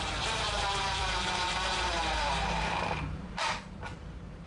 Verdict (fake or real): fake